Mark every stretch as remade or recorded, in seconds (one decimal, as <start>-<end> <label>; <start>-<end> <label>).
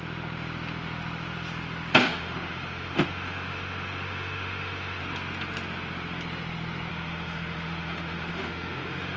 0.0-2.0 recorded; 2.0-5.0 remade; 5.0-6.9 recorded; 6.9-9.2 remade